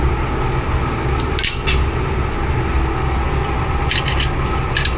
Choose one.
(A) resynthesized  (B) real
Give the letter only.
B